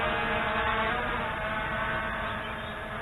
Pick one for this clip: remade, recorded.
recorded